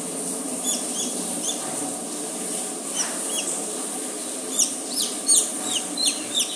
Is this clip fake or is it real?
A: fake